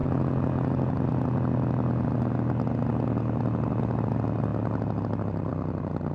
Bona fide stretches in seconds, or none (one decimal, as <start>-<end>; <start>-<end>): 0.0-6.1